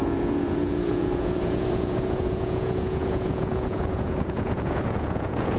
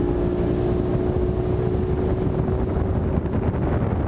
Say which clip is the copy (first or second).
first